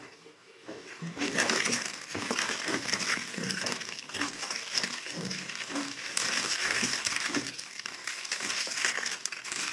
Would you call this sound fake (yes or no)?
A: yes